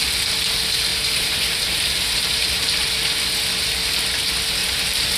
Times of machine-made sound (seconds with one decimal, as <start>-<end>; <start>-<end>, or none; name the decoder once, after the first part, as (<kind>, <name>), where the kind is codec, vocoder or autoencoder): 0.9-3.0 (vocoder, BigVGAN v2); 4.6-5.2